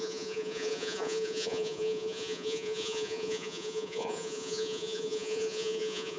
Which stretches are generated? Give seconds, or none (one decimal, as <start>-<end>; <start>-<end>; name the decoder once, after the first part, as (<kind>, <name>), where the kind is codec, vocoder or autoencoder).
0.0-6.2 (vocoder, Vocos)

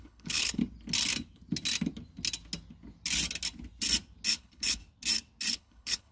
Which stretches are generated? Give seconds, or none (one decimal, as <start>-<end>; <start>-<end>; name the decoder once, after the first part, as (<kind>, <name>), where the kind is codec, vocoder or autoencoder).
0.0-0.6 (codec, HILCodec); 4.3-4.8; 5.5-6.1